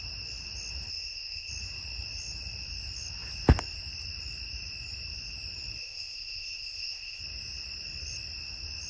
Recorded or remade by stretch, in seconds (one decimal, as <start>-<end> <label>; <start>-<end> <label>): 0.0-0.9 recorded; 0.9-1.5 remade; 1.5-5.8 recorded; 5.8-7.2 remade; 7.2-8.9 recorded